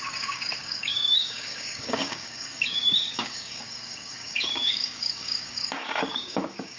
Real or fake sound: fake